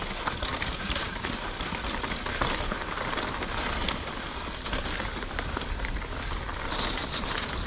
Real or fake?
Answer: real